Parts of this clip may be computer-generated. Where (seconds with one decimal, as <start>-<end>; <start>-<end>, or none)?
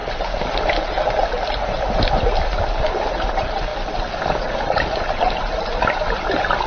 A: 2.0-3.7; 4.2-6.7